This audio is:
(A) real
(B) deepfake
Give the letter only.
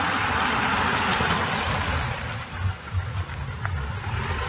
A